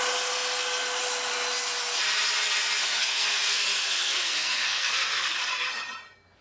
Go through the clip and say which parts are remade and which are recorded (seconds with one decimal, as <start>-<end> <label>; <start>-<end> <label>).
0.0-2.8 recorded; 2.8-5.7 remade; 5.7-6.4 recorded